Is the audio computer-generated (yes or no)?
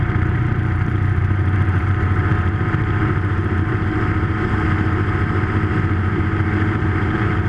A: yes